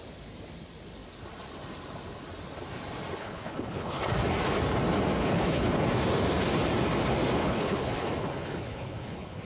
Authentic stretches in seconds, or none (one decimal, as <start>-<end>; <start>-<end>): 0.0-3.2; 4.0-5.2; 5.7-7.4